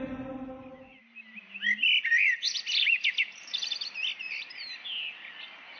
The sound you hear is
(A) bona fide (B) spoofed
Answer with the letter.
A